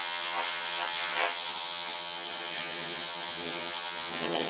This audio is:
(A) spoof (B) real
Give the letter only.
A